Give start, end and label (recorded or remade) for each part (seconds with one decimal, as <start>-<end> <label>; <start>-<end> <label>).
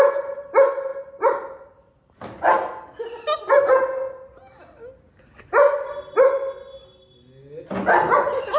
0.0-8.6 recorded